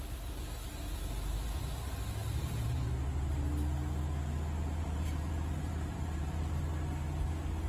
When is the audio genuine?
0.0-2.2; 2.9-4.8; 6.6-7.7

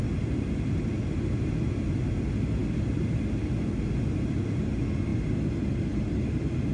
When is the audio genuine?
0.0-5.1; 5.7-6.7